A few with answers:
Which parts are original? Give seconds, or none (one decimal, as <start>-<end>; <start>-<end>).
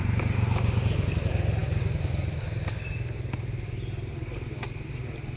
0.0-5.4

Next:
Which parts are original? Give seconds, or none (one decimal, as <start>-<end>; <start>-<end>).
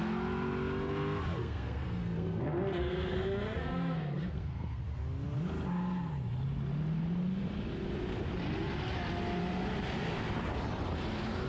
0.0-1.4; 4.8-11.5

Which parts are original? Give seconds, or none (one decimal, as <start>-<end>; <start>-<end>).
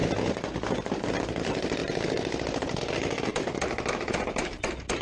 0.0-5.0